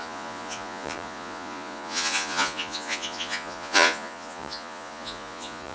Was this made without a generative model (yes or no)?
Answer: no